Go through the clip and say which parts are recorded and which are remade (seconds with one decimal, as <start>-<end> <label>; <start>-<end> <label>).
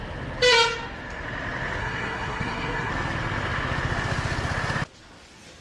0.0-1.8 recorded; 1.8-2.9 remade; 2.9-5.6 recorded